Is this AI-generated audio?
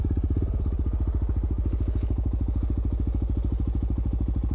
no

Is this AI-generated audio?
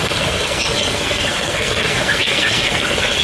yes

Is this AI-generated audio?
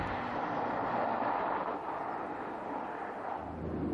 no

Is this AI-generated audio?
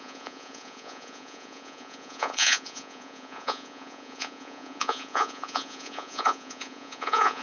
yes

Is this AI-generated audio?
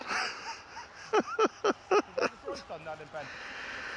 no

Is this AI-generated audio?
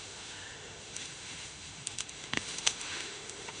yes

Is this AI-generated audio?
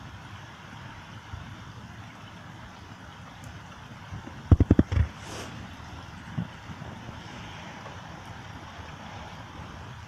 yes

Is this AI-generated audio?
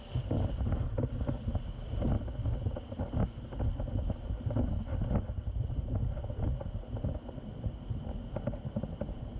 no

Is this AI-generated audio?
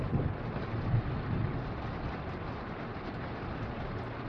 no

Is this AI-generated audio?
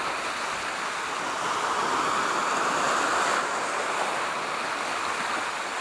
no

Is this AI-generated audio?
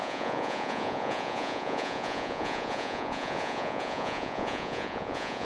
yes